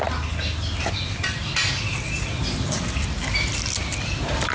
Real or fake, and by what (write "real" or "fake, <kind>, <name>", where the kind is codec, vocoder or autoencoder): real